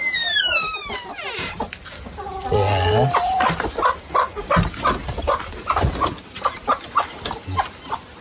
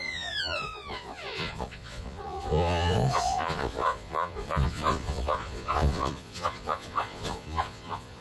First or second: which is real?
first